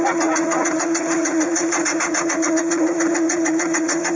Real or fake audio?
fake